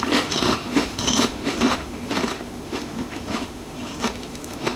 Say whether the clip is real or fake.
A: fake